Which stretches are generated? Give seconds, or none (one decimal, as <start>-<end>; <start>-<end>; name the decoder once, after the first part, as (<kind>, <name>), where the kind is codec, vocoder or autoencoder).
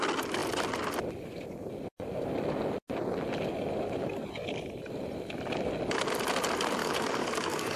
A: 6.8-7.8 (codec, DAC)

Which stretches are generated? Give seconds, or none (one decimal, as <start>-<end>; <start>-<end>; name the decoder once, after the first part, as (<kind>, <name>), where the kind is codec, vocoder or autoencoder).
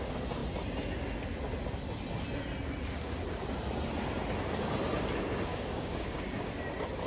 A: 5.5-6.5 (codec, DAC)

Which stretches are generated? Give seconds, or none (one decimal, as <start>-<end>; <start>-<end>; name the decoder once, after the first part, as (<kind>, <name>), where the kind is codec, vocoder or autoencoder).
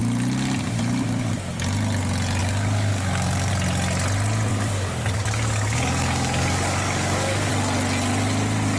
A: 2.4-3.5 (codec, DAC); 4.5-7.5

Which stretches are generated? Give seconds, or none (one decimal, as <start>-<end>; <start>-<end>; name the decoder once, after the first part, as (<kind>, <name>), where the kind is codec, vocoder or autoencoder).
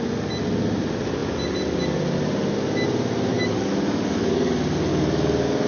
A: 3.3-4.5 (codec, DAC); 4.9-5.7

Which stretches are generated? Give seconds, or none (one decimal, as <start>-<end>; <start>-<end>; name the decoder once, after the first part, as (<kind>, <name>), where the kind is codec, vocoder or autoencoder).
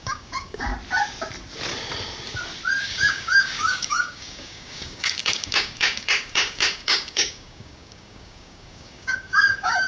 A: 0.0-0.7 (codec, DAC); 2.8-9.9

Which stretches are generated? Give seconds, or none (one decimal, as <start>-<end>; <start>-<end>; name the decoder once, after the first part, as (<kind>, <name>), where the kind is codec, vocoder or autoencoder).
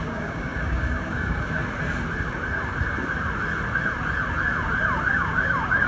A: 0.0-1.6 (codec, DAC); 5.1-5.9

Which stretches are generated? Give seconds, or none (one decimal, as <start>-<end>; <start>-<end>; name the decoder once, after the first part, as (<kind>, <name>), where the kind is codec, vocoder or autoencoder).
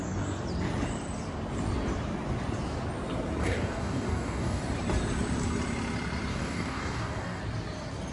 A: 3.4-4.6 (codec, DAC); 6.3-7.4